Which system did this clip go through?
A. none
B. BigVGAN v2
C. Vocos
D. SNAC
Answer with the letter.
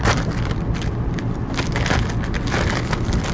A